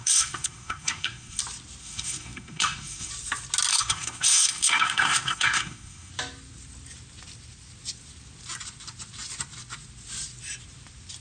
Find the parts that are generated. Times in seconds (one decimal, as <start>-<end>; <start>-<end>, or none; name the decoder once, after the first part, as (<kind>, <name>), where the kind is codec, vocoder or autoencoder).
0.0-1.4 (codec, SNAC); 1.8-3.1; 3.7-6.1